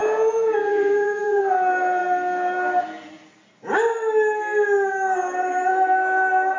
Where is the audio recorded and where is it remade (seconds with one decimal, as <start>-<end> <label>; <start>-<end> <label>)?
0.0-1.4 remade; 1.4-6.6 recorded